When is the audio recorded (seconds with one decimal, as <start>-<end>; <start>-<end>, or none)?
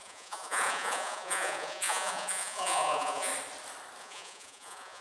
3.3-4.0